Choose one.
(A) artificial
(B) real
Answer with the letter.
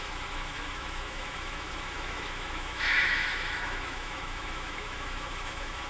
A